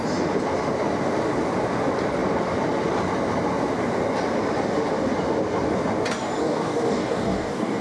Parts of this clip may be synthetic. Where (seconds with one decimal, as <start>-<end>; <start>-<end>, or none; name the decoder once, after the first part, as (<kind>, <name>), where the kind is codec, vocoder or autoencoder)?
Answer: 6.4-7.8 (codec, DAC)